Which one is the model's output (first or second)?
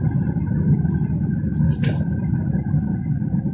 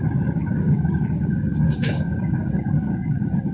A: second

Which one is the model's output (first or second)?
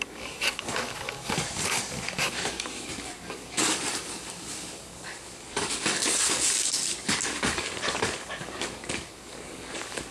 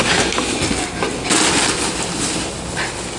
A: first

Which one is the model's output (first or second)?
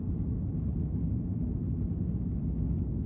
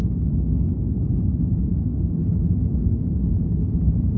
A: second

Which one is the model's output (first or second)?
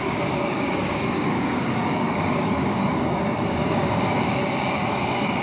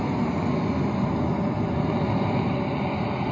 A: first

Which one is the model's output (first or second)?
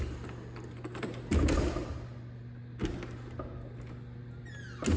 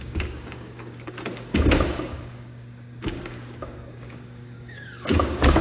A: second